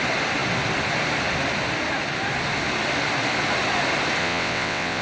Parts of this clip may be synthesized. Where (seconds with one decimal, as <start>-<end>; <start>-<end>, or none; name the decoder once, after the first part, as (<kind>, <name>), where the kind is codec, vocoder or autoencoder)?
4.2-5.0 (vocoder, WaveNeXt)